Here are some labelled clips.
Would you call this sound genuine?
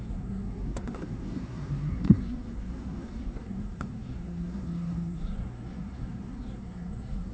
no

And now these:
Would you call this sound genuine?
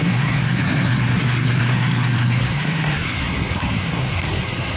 no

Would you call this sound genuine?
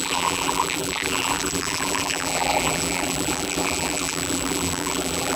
no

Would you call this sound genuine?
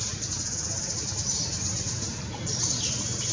yes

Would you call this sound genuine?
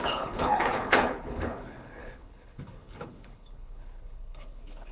no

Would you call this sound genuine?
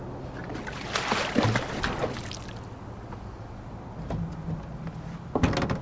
yes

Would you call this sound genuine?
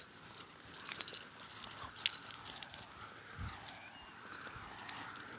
yes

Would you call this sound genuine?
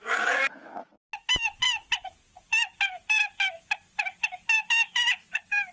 yes